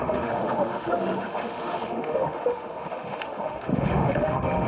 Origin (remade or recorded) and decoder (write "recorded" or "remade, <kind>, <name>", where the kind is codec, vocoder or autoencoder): remade, autoencoder, DAC-VAE